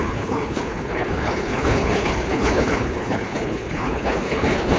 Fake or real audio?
fake